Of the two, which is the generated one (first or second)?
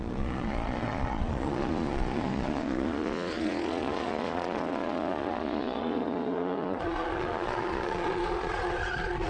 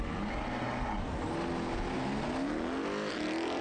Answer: first